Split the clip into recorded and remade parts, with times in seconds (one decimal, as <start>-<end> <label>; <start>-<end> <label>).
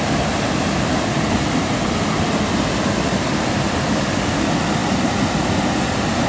0.0-6.3 recorded